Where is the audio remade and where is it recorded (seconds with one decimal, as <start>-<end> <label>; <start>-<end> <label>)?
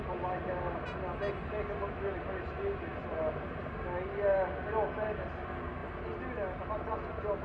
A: 0.0-7.4 recorded